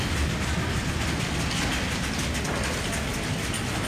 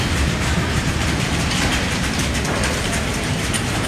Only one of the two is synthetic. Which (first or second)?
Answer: second